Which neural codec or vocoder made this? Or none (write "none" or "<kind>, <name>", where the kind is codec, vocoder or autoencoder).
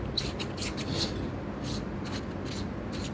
none